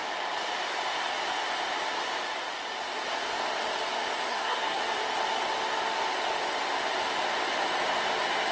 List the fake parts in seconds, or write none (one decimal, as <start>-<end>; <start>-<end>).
4.3-4.8